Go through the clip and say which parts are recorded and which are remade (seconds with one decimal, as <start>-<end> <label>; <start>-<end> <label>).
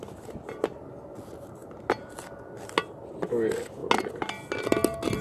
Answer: 0.0-5.2 recorded